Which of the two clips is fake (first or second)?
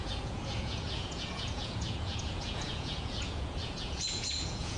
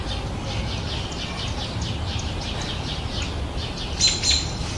first